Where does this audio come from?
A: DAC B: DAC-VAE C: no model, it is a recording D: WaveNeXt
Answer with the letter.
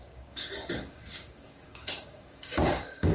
A